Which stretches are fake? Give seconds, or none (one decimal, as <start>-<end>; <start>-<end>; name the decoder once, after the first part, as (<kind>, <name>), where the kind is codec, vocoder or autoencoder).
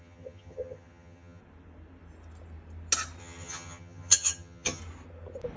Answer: 0.0-1.4 (vocoder, HiFi-GAN); 3.2-4.8